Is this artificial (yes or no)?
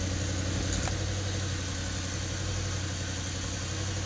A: no